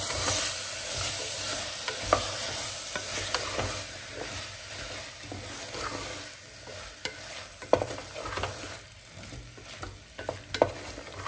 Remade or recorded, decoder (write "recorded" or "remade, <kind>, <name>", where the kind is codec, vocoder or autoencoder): recorded